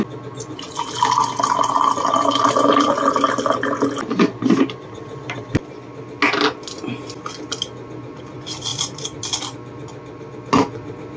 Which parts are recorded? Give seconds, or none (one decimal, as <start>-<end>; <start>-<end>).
0.0-11.2